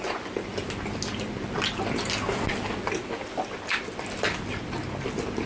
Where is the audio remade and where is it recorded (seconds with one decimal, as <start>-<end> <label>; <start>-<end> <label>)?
0.0-5.5 recorded